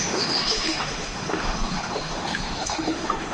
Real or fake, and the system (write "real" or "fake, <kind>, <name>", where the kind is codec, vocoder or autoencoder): fake, autoencoder, DAC-VAE